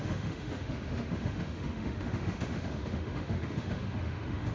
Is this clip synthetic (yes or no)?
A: yes